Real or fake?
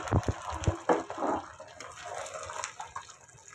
real